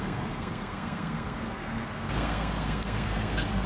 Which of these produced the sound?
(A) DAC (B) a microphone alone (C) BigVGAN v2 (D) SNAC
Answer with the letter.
D